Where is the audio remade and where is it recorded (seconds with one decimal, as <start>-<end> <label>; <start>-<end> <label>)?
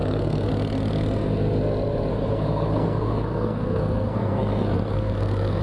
0.0-0.5 remade; 0.5-2.1 recorded; 2.1-5.6 remade